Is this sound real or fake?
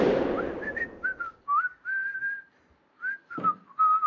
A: real